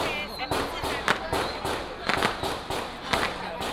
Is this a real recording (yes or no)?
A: yes